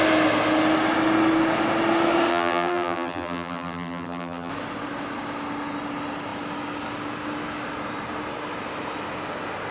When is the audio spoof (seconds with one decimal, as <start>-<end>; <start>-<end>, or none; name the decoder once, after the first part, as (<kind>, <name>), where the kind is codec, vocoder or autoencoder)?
2.3-4.5 (vocoder, BigVGAN v2)